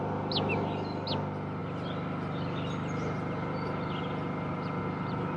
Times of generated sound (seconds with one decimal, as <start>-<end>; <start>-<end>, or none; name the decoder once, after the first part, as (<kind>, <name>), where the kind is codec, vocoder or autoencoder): none